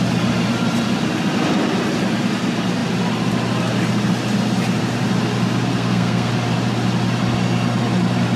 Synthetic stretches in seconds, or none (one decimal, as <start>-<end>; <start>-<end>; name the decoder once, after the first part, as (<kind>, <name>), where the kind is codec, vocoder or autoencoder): 5.7-6.3 (codec, SNAC)